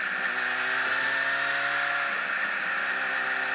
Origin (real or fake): real